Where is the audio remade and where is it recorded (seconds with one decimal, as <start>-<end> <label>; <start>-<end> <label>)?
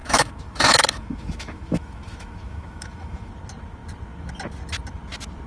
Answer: 0.0-3.3 remade; 3.3-5.5 recorded